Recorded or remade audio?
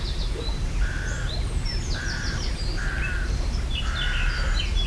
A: remade